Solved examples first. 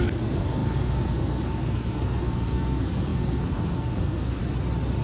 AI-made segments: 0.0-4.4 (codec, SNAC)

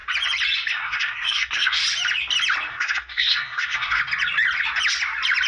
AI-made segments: 0.7-1.8 (codec, SNAC); 2.7-4.0

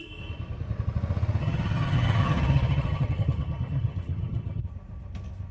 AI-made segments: 1.4-4.7 (vocoder, HiFi-GAN)

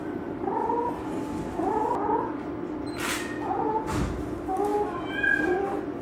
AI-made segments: none

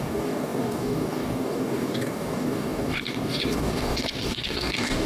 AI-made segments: 0.0-5.1 (codec, DAC)